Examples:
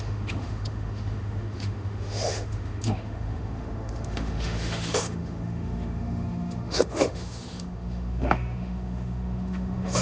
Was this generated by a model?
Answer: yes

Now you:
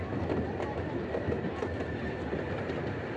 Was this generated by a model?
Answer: no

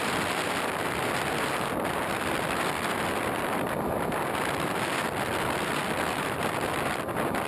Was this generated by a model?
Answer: yes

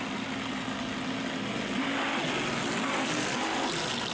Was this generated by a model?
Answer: no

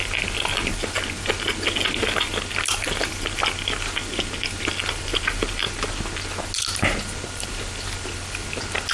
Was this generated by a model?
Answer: no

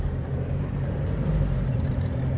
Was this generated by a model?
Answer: yes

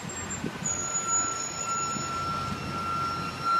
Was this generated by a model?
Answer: no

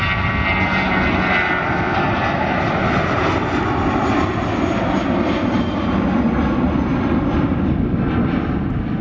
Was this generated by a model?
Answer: no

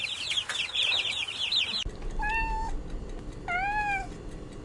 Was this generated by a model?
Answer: no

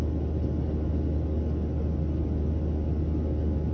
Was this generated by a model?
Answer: no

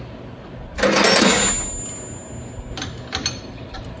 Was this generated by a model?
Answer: no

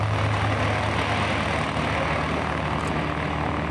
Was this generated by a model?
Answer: no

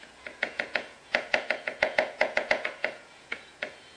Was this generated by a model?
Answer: yes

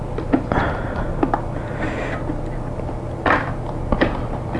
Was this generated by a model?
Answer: no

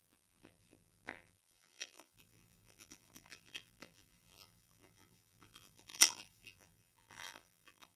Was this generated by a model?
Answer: yes